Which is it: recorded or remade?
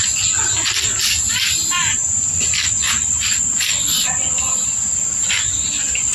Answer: recorded